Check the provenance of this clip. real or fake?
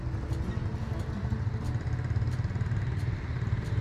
real